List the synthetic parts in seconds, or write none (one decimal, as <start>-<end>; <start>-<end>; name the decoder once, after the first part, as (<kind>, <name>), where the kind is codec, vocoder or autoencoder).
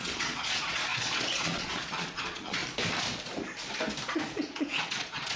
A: 0.0-2.6 (vocoder, Vocos); 4.1-5.4